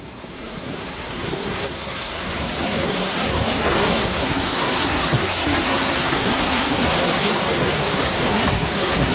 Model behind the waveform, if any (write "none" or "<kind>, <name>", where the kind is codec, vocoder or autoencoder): codec, SNAC